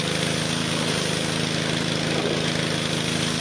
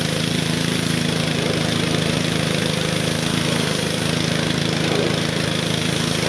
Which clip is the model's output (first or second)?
second